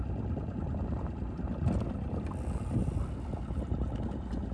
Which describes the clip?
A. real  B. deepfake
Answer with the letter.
A